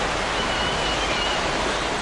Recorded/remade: recorded